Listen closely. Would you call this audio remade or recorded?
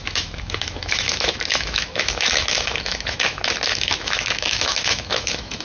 remade